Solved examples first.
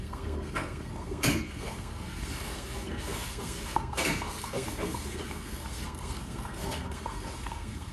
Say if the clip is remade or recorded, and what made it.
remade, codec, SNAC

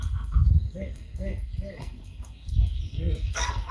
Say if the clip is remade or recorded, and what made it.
remade, codec, SNAC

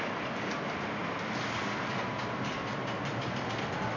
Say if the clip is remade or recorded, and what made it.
recorded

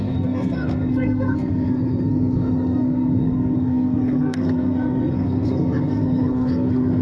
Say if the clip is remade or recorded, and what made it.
remade, codec, SNAC